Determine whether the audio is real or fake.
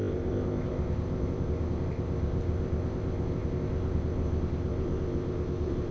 fake